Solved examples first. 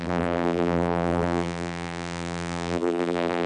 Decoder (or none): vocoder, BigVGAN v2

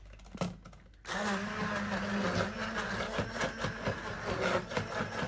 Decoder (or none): none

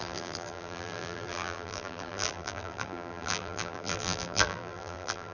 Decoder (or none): vocoder, BigVGAN v2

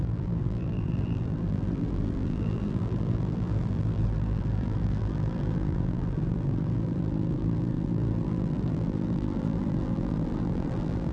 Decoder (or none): vocoder, BigVGAN v2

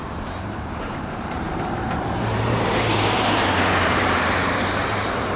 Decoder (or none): vocoder, BigVGAN v2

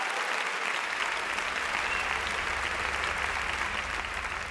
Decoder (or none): none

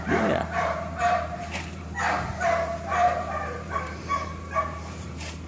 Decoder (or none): vocoder, BigVGAN v2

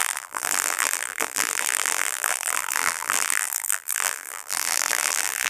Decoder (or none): vocoder, BigVGAN v2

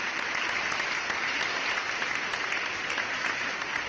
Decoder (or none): none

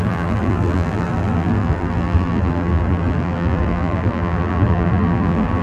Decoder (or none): vocoder, BigVGAN v2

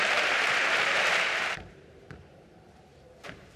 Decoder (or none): vocoder, BigVGAN v2